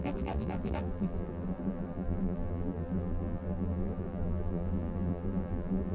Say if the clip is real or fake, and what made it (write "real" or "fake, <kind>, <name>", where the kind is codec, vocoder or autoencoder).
fake, vocoder, BigVGAN v2